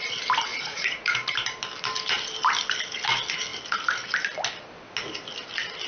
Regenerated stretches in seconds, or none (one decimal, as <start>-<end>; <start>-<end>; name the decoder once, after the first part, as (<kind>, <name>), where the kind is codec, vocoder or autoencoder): 0.5-1.3 (vocoder, Vocos)